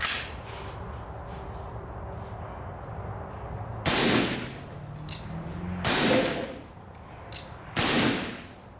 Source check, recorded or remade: recorded